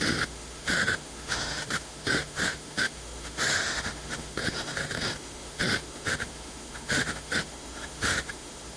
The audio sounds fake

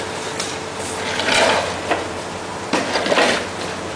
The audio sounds real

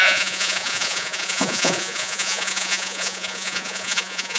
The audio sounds fake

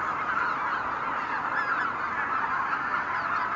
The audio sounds real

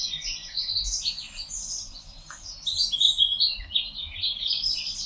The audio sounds real